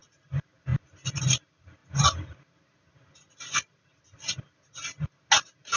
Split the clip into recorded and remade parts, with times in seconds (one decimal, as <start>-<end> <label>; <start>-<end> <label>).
0.0-5.8 recorded